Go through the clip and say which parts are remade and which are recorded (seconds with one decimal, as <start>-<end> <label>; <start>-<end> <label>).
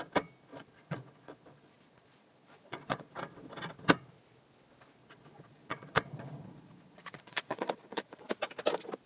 0.0-0.5 recorded; 0.5-3.1 remade; 3.1-5.0 recorded; 5.0-8.2 remade; 8.2-9.1 recorded